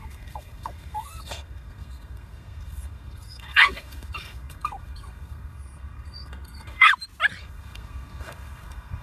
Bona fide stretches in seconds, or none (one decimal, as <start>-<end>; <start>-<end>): 6.9-7.4